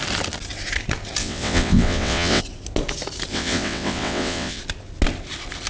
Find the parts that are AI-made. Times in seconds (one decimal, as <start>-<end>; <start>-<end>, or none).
1.2-2.4; 3.3-4.6